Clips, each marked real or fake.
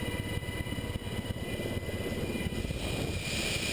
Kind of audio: real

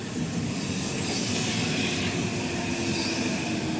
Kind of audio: real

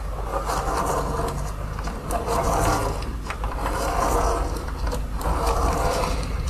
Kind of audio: real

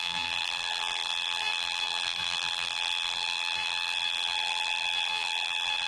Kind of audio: fake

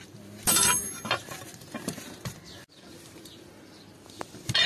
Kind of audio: real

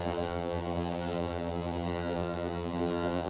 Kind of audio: fake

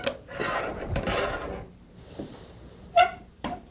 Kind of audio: fake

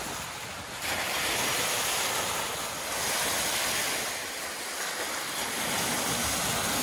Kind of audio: real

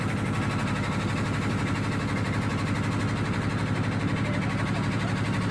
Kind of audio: real